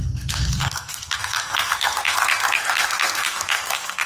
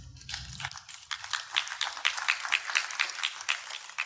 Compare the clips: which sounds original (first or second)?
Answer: second